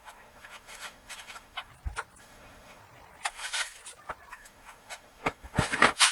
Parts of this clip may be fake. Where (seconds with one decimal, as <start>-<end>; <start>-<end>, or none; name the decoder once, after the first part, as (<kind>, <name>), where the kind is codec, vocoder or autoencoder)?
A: 0.0-1.7 (autoencoder, DAC-VAE); 2.2-2.8; 3.3-3.8; 4.3-6.1